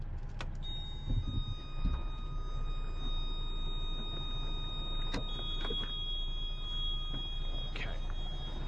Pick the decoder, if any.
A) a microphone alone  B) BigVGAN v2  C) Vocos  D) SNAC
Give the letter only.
A